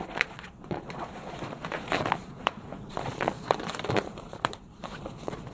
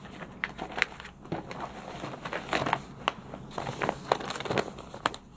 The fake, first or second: first